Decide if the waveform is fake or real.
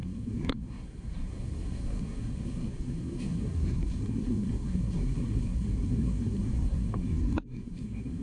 fake